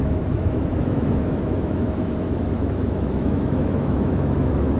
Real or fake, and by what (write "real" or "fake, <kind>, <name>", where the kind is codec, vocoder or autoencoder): fake, autoencoder, DAC-VAE